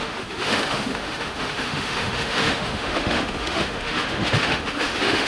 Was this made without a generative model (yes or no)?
no